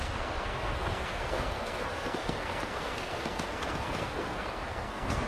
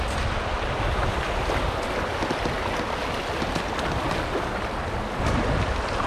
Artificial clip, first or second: first